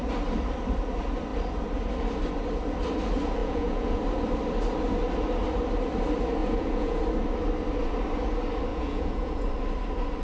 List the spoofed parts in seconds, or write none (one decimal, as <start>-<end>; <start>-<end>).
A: 3.4-4.0; 6.4-7.0; 8.7-9.5